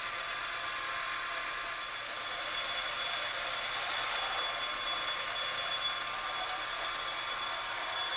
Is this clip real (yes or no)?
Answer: yes